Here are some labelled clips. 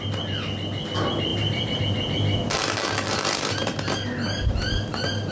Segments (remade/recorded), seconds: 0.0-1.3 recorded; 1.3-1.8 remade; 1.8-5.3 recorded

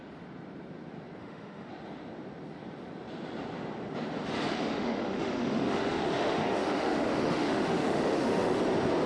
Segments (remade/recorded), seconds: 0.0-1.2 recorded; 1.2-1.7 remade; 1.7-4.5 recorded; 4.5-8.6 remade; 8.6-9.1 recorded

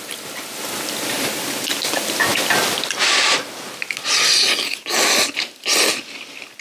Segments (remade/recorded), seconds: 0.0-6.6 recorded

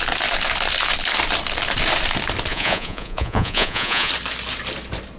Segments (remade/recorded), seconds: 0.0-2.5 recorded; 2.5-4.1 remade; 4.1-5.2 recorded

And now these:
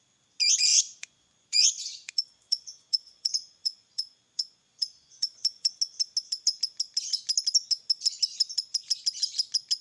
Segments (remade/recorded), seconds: 0.0-0.7 recorded; 0.7-5.7 remade; 5.7-9.8 recorded